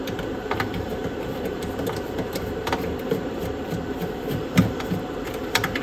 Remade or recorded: remade